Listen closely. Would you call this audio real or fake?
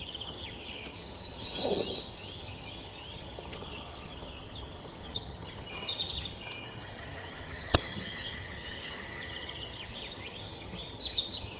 fake